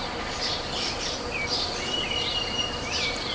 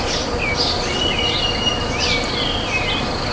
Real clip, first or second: second